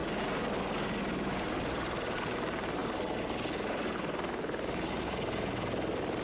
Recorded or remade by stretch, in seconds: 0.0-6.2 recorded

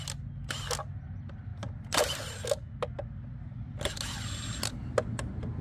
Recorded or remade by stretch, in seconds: 0.0-5.6 recorded

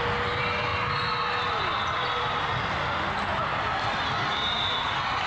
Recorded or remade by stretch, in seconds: 0.0-5.3 recorded

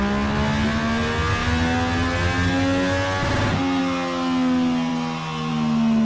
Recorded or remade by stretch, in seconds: 0.0-6.0 recorded

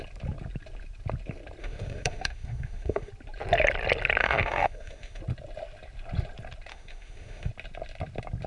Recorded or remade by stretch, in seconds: 0.0-1.6 recorded; 1.6-3.1 remade; 3.1-4.2 recorded; 4.2-5.2 remade; 5.2-6.7 recorded; 6.7-7.5 remade; 7.5-8.5 recorded